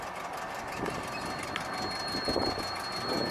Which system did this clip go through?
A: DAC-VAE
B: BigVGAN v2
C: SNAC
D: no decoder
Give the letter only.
D